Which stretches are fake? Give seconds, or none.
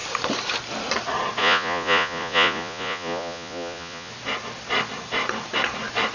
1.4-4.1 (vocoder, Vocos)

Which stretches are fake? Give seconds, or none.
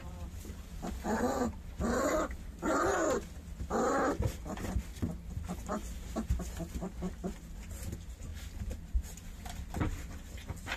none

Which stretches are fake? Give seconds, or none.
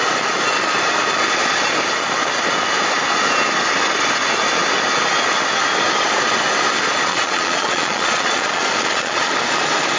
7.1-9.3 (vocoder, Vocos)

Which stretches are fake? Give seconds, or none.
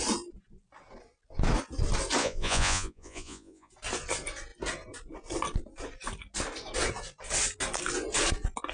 2.2-3.7 (vocoder, Vocos)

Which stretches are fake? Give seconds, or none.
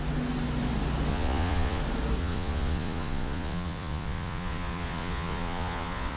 1.1-1.8 (vocoder, Vocos); 2.2-6.2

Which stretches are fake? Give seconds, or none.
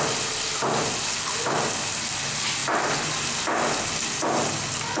none